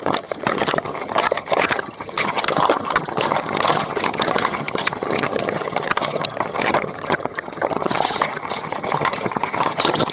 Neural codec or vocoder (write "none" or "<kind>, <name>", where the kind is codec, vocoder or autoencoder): vocoder, HiFi-GAN